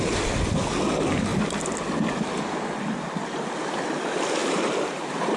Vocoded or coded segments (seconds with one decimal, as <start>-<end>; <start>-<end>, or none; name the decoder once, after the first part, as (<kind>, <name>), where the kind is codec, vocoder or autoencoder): none